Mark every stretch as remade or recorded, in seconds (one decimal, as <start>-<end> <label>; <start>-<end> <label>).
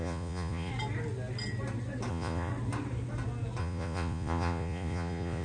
0.0-0.7 remade; 0.7-2.1 recorded; 2.1-2.5 remade; 2.5-3.6 recorded; 3.6-5.4 remade